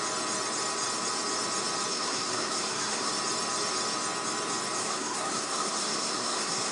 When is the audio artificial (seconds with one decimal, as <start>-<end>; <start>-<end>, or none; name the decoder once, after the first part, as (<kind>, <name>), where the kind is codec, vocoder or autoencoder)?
1.9-3.1 (codec, SNAC); 4.8-6.7